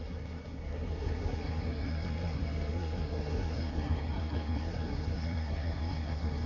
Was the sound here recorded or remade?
remade